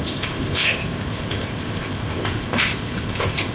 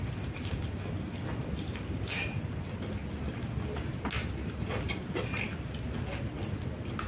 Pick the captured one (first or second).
second